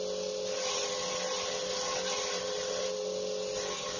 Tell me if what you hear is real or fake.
real